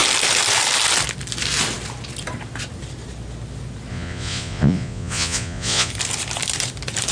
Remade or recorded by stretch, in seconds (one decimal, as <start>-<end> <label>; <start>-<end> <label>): 0.0-3.9 recorded; 3.9-5.9 remade; 5.9-7.1 recorded